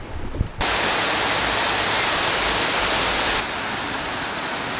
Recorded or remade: recorded